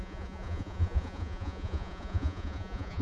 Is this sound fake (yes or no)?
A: yes